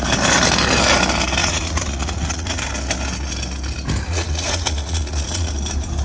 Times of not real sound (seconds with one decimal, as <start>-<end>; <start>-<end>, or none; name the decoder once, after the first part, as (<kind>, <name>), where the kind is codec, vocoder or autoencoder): 1.4-2.6 (vocoder, Vocos); 4.1-5.5